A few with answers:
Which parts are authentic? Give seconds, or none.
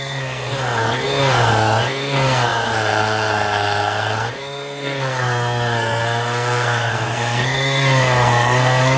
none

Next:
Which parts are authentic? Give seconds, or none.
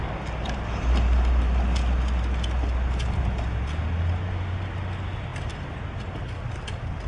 0.0-7.1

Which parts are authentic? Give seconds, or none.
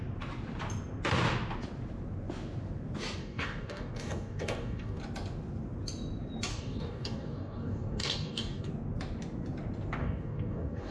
0.0-3.2; 5.0-6.5; 8.7-10.0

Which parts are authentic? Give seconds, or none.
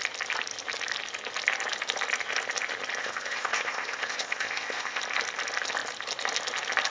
0.0-3.0; 5.0-6.9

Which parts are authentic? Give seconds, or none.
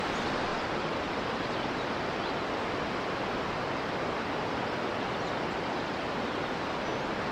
0.0-7.3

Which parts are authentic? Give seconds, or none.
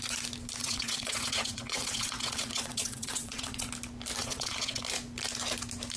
0.0-0.6; 3.7-4.2; 4.8-6.0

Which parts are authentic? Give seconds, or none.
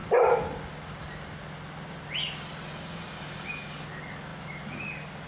0.0-5.3